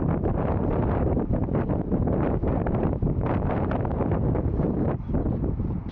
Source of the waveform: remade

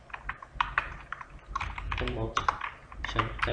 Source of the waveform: remade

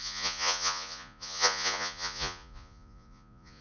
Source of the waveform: remade